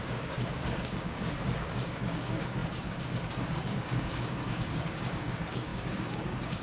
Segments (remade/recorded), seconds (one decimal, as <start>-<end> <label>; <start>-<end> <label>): 0.0-6.6 remade